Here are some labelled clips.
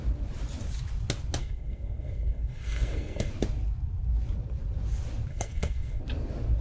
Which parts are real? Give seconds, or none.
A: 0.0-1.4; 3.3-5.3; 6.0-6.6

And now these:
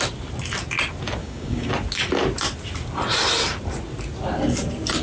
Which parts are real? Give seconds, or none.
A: 0.0-1.2; 1.7-5.0

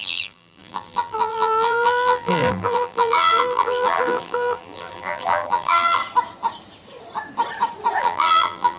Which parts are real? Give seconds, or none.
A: 6.0-8.0

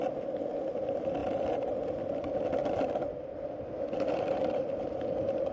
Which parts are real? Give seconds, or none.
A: 0.0-5.5